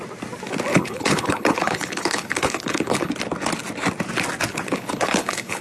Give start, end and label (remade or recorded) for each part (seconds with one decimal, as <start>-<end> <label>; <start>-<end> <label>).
0.0-0.7 recorded; 0.7-3.1 remade; 3.1-4.5 recorded; 4.5-5.6 remade